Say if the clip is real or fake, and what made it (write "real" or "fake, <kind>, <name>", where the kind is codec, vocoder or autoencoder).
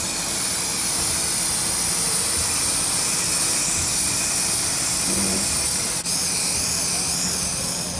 real